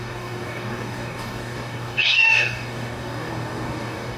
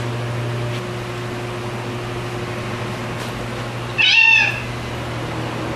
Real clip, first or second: second